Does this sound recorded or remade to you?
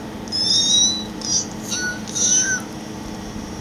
recorded